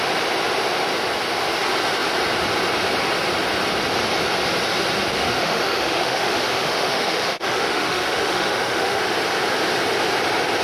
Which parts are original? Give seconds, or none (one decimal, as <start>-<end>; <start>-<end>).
0.0-5.1; 9.0-10.6